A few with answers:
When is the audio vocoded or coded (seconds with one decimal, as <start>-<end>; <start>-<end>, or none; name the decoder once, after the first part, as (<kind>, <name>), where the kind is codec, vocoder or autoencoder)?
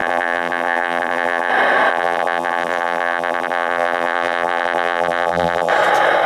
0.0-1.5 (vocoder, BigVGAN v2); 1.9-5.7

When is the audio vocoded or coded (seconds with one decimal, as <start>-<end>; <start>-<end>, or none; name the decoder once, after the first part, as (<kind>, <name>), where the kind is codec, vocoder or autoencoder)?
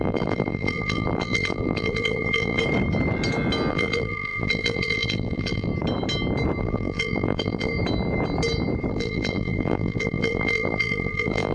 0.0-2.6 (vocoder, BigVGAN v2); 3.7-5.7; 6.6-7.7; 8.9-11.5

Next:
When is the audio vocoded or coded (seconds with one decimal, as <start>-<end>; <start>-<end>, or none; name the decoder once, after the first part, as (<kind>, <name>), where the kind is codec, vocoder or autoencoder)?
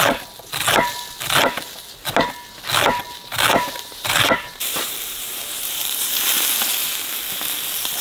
3.3-6.1 (vocoder, BigVGAN v2)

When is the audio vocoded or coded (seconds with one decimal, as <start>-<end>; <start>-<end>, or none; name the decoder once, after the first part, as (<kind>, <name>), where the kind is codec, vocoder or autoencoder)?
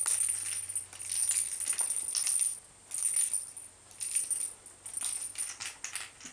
none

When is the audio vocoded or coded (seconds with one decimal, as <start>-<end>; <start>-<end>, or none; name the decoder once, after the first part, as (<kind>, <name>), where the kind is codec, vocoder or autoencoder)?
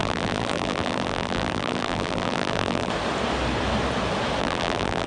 0.0-2.9 (vocoder, BigVGAN v2); 4.4-5.1